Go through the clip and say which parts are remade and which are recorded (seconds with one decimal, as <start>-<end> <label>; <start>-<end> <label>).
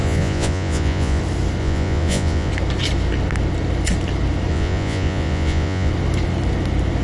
0.0-1.2 remade; 1.2-1.6 recorded; 1.6-2.5 remade; 2.5-4.5 recorded; 4.5-5.9 remade; 5.9-7.0 recorded